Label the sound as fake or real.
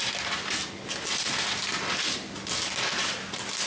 real